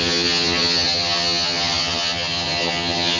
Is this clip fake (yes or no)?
yes